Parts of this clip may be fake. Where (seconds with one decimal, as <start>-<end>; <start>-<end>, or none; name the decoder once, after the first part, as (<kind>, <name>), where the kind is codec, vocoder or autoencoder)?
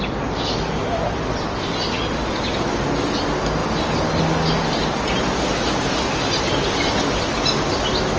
none